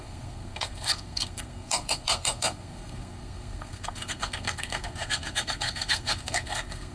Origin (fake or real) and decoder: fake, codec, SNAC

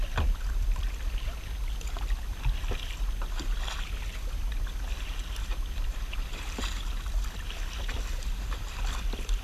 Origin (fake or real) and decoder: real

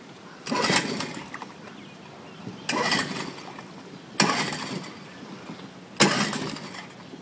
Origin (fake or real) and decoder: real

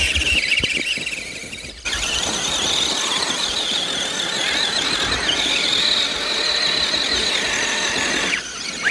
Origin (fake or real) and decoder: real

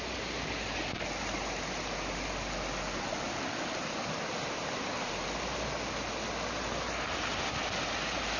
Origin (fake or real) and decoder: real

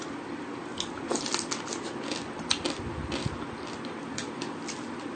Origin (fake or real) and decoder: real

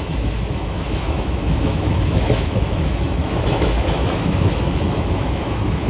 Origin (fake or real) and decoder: fake, autoencoder, DAC-VAE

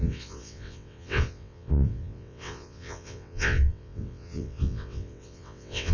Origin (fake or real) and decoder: fake, vocoder, WaveNeXt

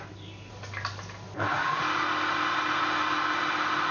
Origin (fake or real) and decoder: real